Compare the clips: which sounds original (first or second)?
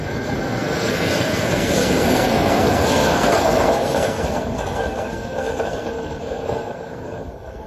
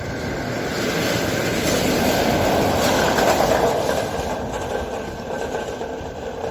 second